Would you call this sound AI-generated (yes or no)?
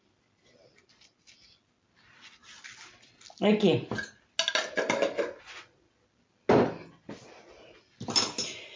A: no